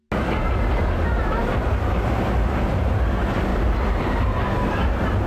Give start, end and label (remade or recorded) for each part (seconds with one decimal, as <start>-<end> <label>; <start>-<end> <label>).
0.0-5.3 recorded